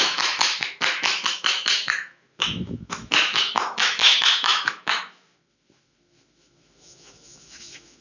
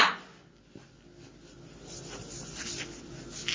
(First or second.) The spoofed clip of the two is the first